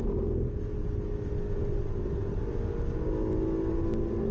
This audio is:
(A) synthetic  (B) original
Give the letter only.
B